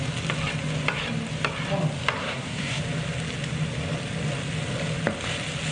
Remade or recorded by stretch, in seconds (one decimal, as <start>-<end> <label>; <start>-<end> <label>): 0.0-2.2 recorded; 2.2-2.8 remade; 2.8-5.7 recorded